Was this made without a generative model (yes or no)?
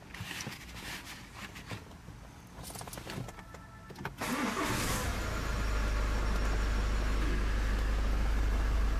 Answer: yes